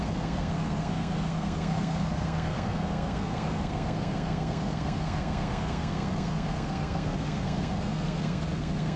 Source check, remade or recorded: remade